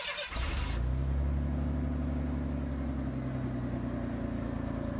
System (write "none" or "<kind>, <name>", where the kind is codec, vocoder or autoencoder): none